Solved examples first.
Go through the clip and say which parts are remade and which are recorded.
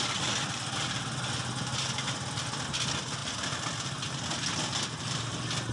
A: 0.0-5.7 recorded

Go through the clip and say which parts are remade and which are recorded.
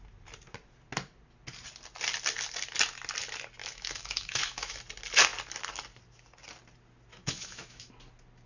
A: 0.0-3.6 recorded; 3.6-4.8 remade; 4.8-7.1 recorded; 7.1-7.9 remade; 7.9-8.5 recorded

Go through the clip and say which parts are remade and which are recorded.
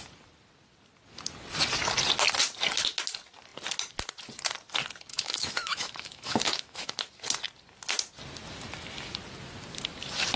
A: 0.0-5.1 recorded; 5.1-7.0 remade; 7.0-10.4 recorded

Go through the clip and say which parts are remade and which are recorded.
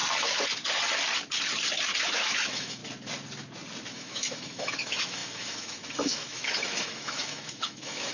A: 0.0-2.0 recorded; 2.0-2.8 remade; 2.8-3.9 recorded; 3.9-8.1 remade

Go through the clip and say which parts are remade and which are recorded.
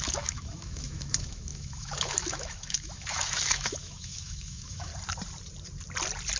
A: 0.0-4.9 remade; 4.9-6.4 recorded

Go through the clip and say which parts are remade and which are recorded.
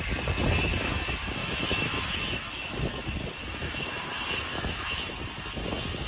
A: 0.0-1.4 recorded; 1.4-5.1 remade; 5.1-6.1 recorded